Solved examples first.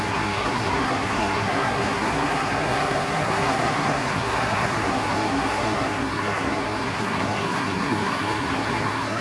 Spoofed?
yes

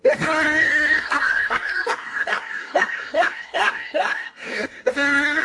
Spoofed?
yes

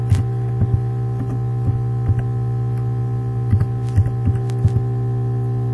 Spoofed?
no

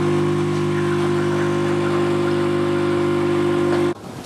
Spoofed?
no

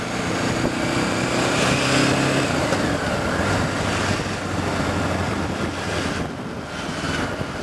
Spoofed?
no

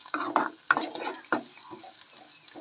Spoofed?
no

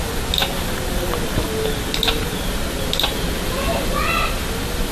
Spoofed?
no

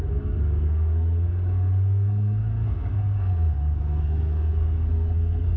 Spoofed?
yes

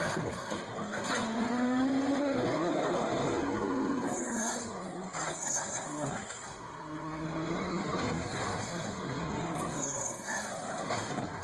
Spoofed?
yes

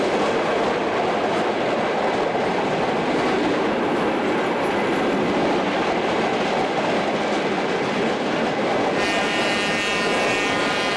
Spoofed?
no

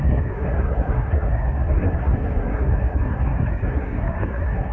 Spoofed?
yes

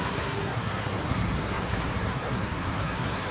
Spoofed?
yes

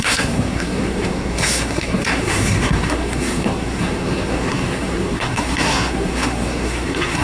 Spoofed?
yes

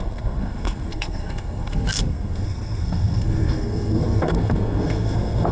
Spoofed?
yes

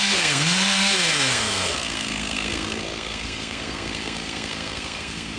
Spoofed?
yes